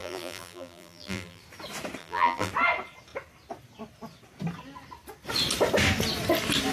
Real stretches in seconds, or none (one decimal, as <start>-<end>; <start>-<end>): 1.4-2.0; 2.5-6.7